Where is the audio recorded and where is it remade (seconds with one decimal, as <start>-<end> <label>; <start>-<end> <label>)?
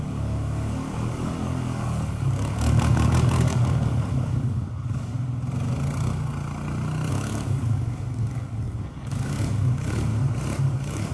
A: 0.0-5.1 remade; 5.1-7.1 recorded; 7.1-10.1 remade; 10.1-10.6 recorded; 10.6-11.1 remade